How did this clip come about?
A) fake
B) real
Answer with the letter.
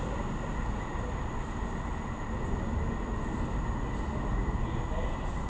B